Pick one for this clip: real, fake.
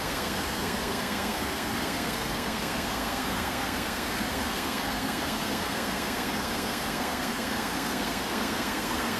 fake